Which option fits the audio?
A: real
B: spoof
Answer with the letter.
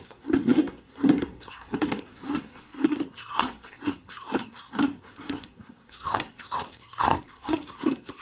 B